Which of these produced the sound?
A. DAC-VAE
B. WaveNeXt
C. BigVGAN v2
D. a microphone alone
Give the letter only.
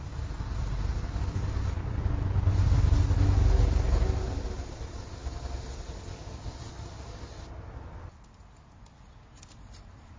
D